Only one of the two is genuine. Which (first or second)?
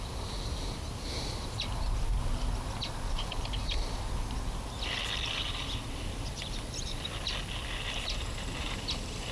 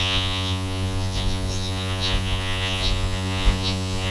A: first